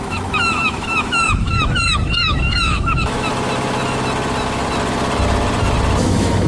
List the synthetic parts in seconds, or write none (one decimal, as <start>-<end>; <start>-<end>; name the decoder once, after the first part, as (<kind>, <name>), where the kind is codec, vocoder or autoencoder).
0.0-3.3 (autoencoder, DAC-VAE); 6.0-6.5